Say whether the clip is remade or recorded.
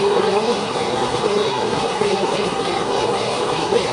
remade